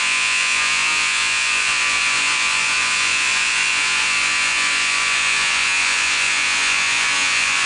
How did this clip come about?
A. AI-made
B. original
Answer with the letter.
A